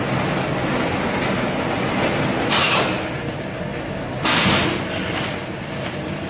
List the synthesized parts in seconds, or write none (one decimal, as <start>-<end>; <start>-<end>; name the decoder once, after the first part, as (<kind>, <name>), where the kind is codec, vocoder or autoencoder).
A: none